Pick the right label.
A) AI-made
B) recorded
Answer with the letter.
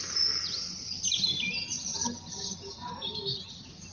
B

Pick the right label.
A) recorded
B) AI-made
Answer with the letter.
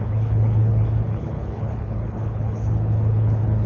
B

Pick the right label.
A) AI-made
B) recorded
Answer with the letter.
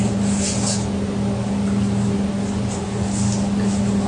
B